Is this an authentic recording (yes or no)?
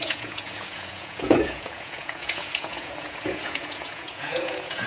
no